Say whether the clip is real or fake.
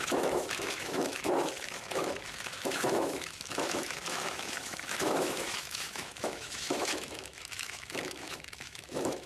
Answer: fake